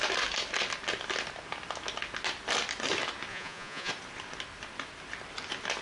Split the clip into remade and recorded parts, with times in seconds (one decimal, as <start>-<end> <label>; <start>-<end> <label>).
0.0-3.3 recorded; 3.3-3.9 remade; 3.9-5.8 recorded